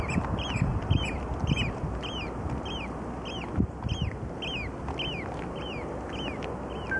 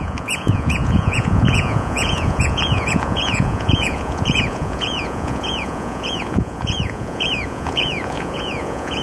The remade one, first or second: second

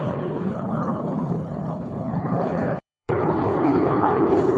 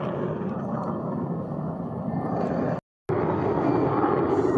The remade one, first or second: first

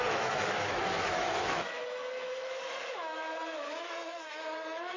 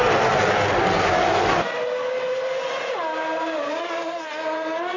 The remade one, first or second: first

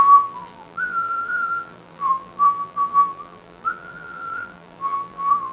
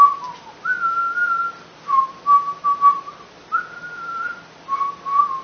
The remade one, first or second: first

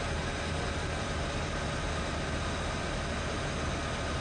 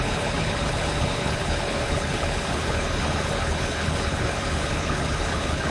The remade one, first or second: second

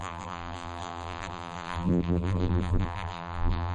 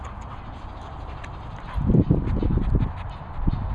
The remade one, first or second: first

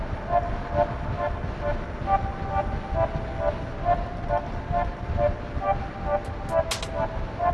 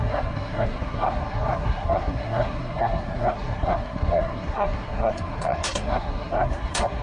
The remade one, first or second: second